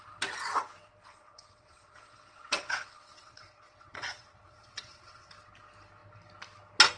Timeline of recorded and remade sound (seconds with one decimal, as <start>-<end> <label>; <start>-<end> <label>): 0.0-1.1 recorded; 1.1-5.3 remade; 5.3-7.0 recorded